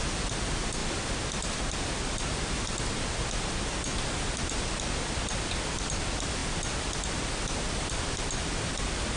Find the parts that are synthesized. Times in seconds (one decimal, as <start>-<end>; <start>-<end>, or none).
none